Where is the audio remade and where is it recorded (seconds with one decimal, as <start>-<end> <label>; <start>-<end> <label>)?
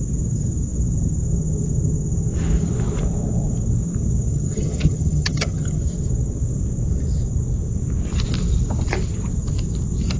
0.0-4.3 recorded; 4.3-5.8 remade; 5.8-10.2 recorded